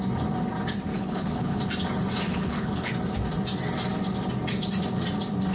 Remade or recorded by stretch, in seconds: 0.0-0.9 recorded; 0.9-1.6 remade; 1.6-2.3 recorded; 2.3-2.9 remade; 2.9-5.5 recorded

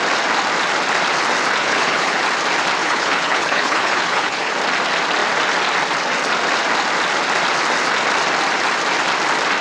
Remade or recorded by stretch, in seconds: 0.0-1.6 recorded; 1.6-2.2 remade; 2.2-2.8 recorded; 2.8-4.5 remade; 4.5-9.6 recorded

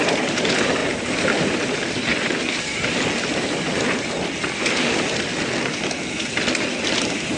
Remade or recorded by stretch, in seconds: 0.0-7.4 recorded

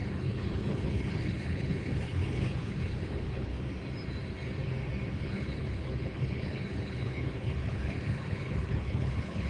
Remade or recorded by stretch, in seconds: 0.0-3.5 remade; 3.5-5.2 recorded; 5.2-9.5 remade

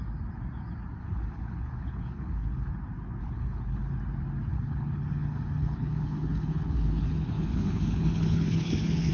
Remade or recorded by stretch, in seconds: 0.0-1.0 recorded; 1.0-2.7 remade; 2.7-3.2 recorded; 3.2-3.9 remade; 3.9-4.5 recorded; 4.5-9.1 remade

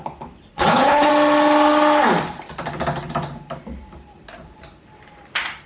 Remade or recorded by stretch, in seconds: 0.0-0.5 recorded; 0.5-1.1 remade; 1.1-5.7 recorded

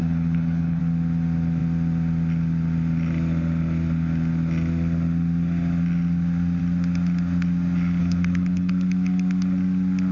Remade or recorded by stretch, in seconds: 0.0-0.8 remade; 0.8-8.0 recorded; 8.0-8.7 remade; 8.7-10.1 recorded

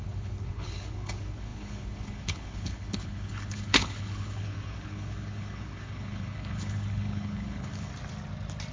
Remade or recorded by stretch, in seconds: 0.0-7.9 remade; 7.9-8.7 recorded